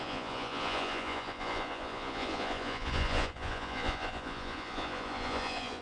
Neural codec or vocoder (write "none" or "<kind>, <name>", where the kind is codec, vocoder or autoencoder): vocoder, Vocos